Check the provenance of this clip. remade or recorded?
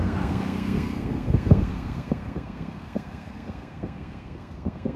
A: remade